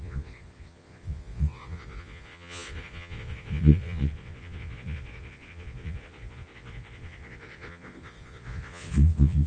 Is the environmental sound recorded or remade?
remade